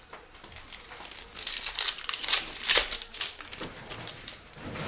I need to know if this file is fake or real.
real